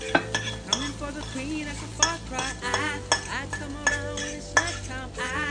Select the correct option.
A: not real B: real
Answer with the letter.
B